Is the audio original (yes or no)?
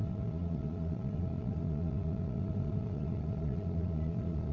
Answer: no